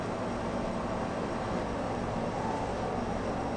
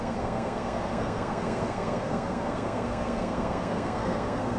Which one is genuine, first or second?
first